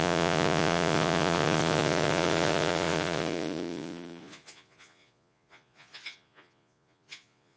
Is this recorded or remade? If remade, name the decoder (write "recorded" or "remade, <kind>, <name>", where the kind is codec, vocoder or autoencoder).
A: remade, vocoder, Vocos